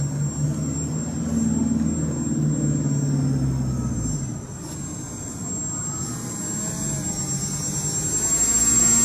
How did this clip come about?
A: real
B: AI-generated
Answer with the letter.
A